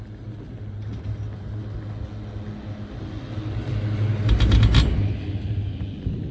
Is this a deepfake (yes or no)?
no